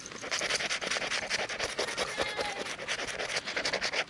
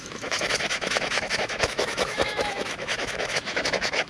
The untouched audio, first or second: first